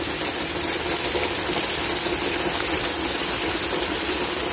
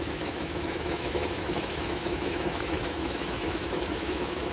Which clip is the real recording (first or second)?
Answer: first